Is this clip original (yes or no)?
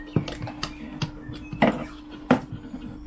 yes